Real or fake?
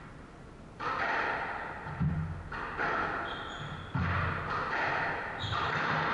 real